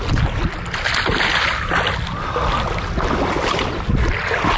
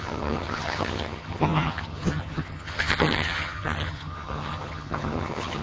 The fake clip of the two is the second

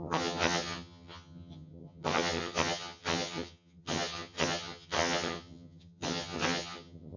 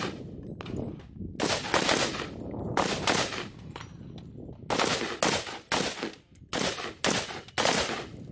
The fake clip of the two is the first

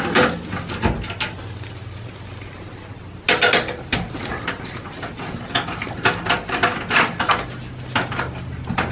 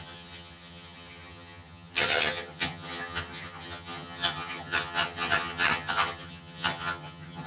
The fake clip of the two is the second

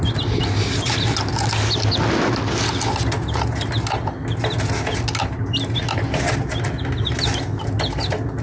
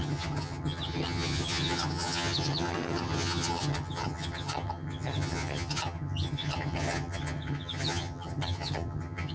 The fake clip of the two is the second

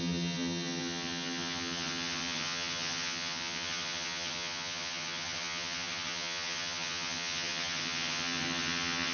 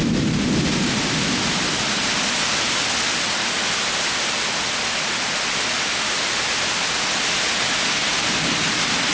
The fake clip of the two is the first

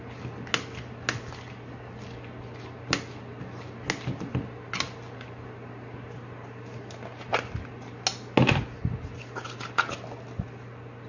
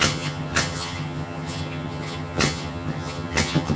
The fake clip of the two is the second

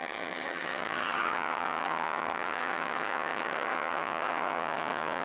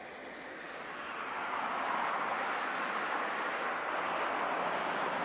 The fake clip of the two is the first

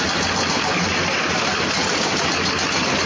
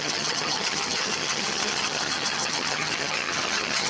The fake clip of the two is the second